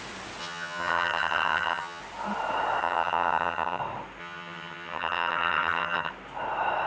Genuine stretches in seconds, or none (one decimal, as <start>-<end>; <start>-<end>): 0.0-0.4; 2.0-2.8; 3.8-4.2; 6.1-6.9